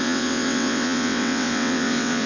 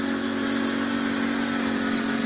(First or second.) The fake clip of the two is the first